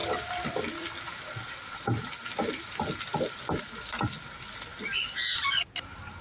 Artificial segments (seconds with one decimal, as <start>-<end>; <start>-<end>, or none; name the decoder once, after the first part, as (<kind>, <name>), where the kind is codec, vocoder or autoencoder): none